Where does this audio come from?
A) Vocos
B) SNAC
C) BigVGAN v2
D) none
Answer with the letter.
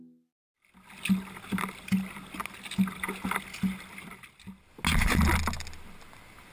D